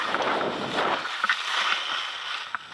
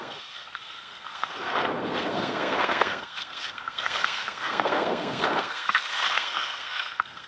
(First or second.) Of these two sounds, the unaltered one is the first